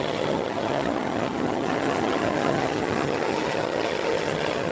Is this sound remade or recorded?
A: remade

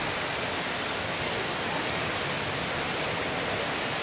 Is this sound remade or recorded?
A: recorded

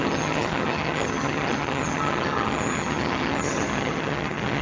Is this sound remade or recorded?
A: remade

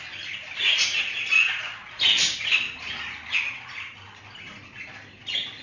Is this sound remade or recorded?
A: recorded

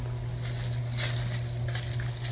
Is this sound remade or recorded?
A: recorded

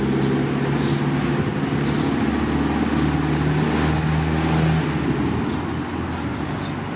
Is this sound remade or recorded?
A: recorded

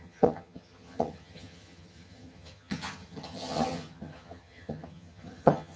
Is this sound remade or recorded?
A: remade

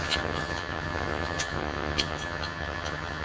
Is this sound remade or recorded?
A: remade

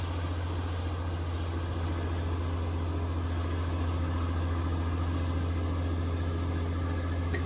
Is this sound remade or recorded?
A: recorded